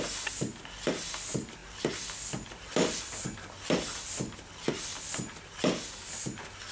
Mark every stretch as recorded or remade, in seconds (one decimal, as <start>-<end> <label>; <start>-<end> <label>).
0.0-6.7 recorded